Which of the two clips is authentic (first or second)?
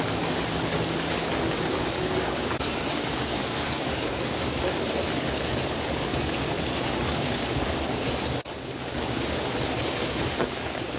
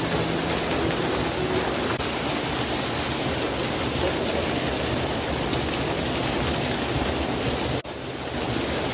second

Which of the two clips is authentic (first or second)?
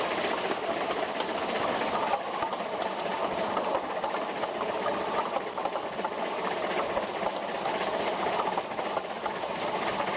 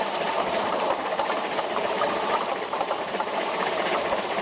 first